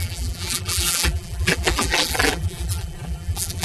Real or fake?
fake